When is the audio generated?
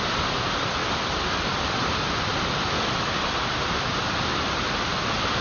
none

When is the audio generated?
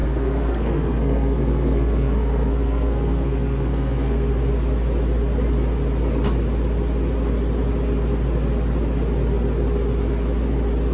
0.0-4.3 (codec, SNAC)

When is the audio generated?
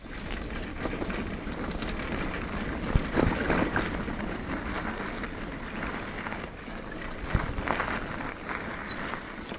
none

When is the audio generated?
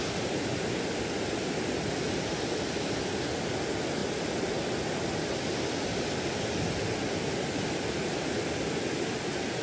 4.0-8.5 (vocoder, BigVGAN v2)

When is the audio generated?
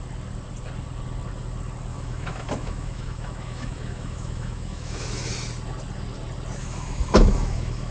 1.9-5.3 (autoencoder, DAC-VAE); 6.6-7.9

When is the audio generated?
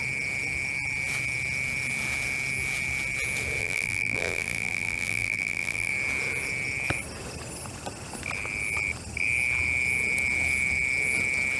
3.6-5.9 (vocoder, BigVGAN v2)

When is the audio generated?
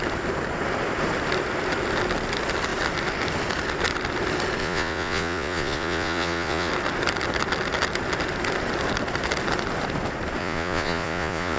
4.6-6.7 (vocoder, Vocos); 10.4-11.6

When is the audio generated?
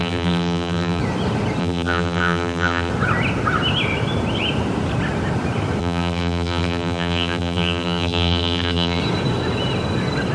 0.0-1.0 (vocoder, BigVGAN v2); 1.6-2.9; 5.8-9.0